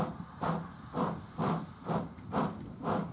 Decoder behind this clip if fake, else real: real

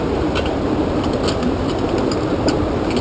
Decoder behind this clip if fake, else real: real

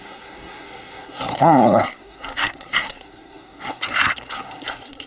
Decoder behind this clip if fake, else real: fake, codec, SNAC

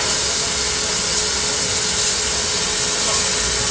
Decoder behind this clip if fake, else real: real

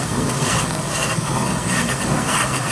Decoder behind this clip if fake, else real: fake, codec, SNAC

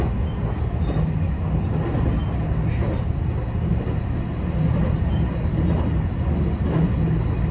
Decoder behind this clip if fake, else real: real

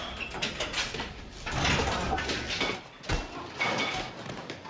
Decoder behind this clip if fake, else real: real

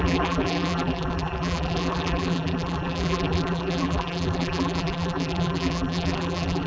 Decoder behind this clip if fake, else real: fake, vocoder, BigVGAN v2